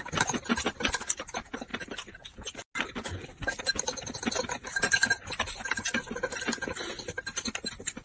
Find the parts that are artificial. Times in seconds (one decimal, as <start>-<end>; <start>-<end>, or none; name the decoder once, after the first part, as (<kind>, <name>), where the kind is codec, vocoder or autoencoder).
none